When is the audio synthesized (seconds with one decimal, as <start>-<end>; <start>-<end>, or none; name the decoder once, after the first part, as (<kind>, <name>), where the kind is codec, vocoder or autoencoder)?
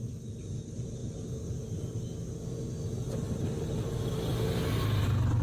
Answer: 0.0-0.6 (vocoder, BigVGAN v2); 4.3-4.8